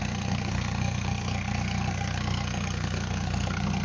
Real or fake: fake